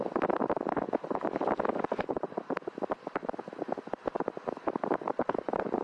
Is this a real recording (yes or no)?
yes